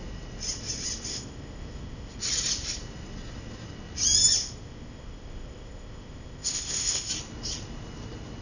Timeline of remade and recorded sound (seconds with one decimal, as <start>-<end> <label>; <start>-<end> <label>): 0.0-1.1 recorded; 1.1-2.2 remade; 2.2-4.4 recorded; 4.4-7.1 remade; 7.1-8.4 recorded